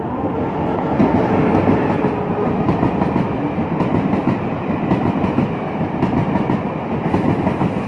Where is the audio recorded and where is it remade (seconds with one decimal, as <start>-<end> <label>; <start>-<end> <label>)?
0.0-7.9 recorded